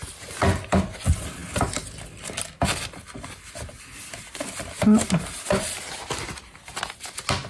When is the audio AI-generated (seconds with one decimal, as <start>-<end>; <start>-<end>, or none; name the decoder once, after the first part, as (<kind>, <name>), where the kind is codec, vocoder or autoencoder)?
none